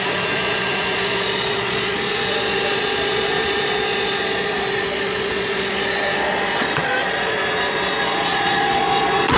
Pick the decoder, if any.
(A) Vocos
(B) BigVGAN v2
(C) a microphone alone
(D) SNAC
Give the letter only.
A